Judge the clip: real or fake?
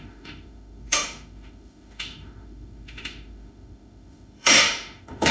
fake